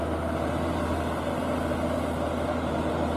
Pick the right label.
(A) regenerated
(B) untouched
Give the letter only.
B